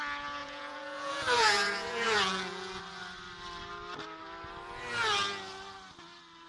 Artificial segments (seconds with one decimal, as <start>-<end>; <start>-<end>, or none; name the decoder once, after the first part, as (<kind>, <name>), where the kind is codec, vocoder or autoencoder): 0.4-2.8 (vocoder, Vocos)